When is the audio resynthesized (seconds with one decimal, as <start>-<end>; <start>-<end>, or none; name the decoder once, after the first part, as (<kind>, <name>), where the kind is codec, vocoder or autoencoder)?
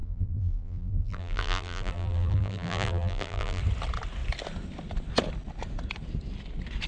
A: 0.0-3.6 (vocoder, BigVGAN v2)